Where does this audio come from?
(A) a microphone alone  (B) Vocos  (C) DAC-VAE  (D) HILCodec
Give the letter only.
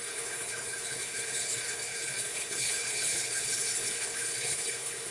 D